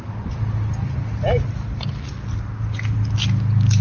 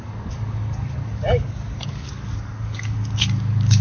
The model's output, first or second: second